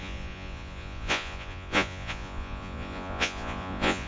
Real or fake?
fake